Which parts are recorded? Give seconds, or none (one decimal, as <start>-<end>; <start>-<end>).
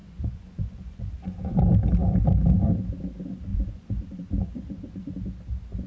1.6-3.5; 5.1-5.9